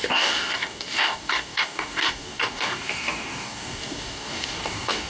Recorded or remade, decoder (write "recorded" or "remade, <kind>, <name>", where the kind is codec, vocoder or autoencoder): remade, codec, DAC